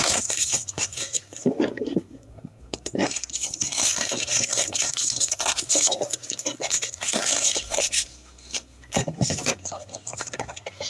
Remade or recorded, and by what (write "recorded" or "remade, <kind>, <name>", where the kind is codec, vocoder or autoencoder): remade, codec, SNAC